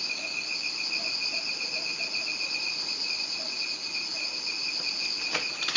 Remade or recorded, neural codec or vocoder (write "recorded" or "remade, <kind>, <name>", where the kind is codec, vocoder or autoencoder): recorded